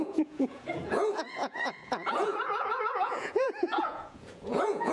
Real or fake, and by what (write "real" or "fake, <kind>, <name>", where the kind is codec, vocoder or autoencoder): fake, vocoder, Vocos